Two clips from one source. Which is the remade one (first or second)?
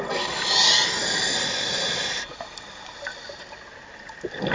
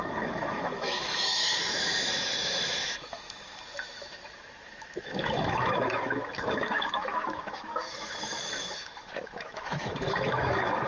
second